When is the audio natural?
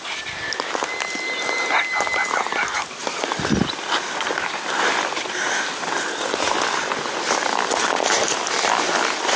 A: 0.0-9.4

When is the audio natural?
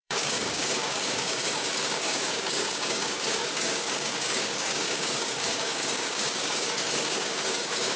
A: none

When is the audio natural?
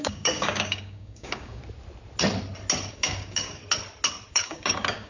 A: 1.6-2.9; 3.6-4.3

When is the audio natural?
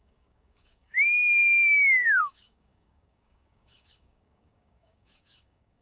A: none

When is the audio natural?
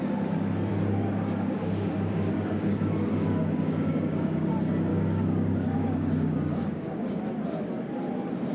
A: 0.0-0.7; 4.5-4.9; 7.2-8.5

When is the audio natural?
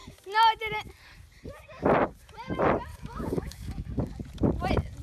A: 0.0-2.9; 4.0-5.0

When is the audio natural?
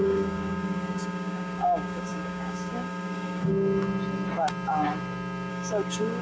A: 3.5-5.5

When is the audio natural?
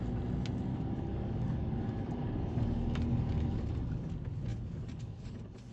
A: 0.0-0.7; 4.1-4.5